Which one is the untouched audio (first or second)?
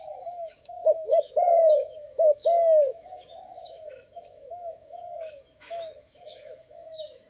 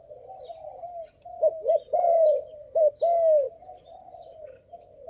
second